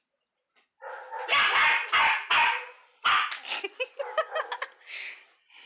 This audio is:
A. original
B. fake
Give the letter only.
A